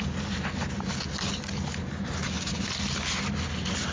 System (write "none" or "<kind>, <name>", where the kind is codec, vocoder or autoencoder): none